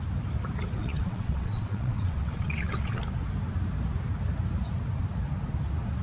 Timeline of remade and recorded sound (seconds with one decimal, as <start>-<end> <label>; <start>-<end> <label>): 0.0-0.8 recorded; 0.8-3.0 remade; 3.0-6.0 recorded